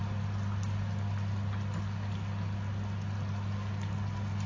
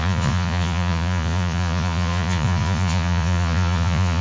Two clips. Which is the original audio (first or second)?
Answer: first